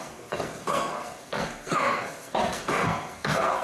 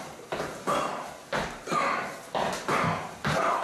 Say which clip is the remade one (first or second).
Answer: first